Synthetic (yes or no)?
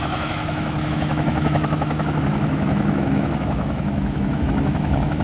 yes